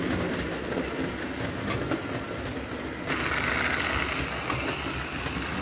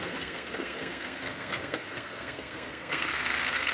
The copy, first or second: second